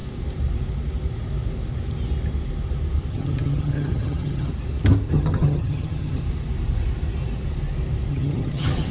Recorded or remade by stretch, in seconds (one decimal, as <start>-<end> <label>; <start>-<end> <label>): 0.0-3.1 recorded; 3.1-4.5 remade; 4.5-5.1 recorded; 5.1-6.2 remade; 6.2-8.1 recorded; 8.1-8.9 remade